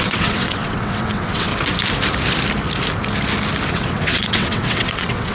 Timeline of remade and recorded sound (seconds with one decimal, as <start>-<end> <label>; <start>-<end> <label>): 0.0-1.5 remade; 1.5-3.7 recorded; 3.7-5.3 remade